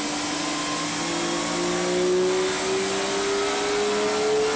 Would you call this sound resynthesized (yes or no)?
no